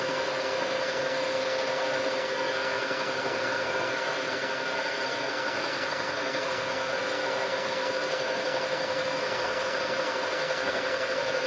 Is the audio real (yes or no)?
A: no